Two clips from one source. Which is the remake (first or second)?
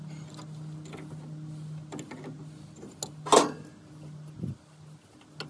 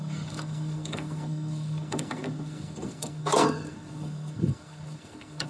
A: second